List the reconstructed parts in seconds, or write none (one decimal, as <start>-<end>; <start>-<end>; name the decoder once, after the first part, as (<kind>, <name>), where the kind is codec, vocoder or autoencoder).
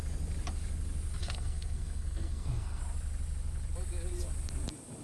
1.2-2.8 (codec, SNAC)